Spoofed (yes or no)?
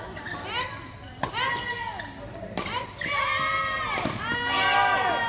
no